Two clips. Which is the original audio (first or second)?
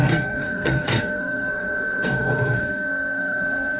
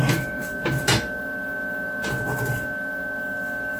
second